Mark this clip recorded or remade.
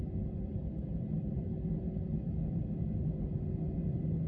recorded